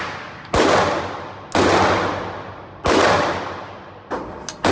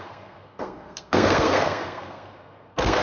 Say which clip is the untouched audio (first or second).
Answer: first